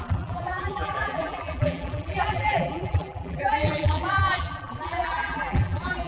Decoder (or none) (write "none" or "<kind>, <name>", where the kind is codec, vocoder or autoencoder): vocoder, BigVGAN v2